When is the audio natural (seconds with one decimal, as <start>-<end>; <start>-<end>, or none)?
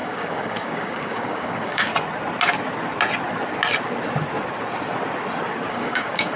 1.9-5.7